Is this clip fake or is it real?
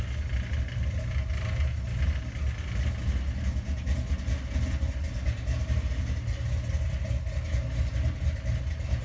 real